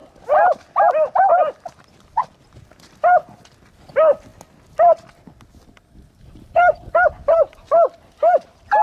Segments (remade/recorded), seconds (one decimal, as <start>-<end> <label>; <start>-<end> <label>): 0.0-8.8 recorded